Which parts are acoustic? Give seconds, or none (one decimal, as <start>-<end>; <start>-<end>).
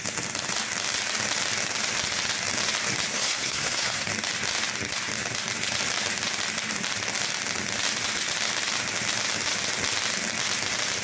0.0-3.1; 4.1-11.0